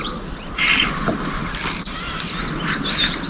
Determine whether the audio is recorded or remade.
recorded